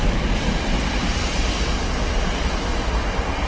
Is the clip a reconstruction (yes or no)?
no